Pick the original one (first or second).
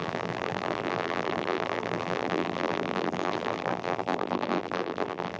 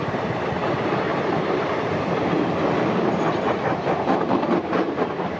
second